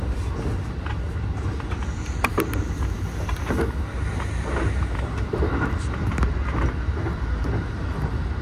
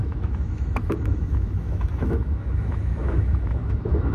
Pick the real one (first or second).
first